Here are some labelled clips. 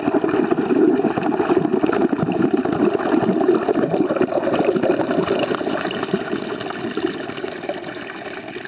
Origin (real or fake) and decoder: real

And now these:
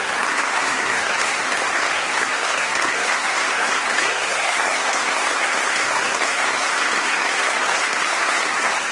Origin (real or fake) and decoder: fake, codec, SNAC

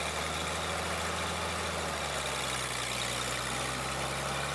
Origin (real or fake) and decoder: real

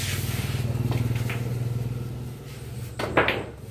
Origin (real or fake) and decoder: real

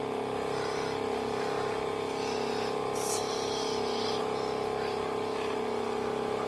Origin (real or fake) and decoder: real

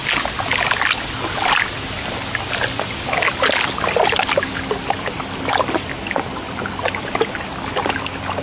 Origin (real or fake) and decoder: real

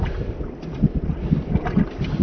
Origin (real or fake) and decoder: real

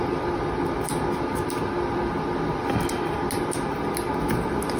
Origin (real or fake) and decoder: real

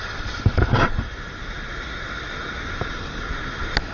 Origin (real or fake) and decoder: real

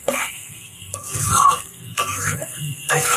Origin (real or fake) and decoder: fake, codec, SNAC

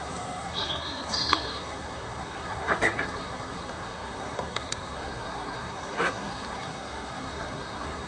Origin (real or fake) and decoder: fake, codec, SNAC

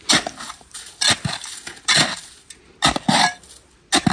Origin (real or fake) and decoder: real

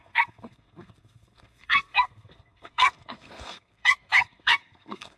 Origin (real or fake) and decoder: fake, codec, SNAC